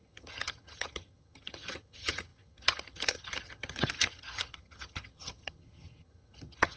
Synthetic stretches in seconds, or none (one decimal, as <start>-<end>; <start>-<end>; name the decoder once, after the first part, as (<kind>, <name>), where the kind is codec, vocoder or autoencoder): 0.0-6.8 (vocoder, HiFi-GAN)